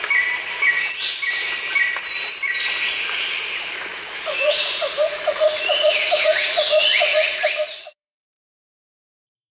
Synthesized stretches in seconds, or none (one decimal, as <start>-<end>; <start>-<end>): 3.9-8.4